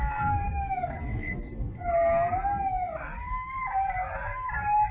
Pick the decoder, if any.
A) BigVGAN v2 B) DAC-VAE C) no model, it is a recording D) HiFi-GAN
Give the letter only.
C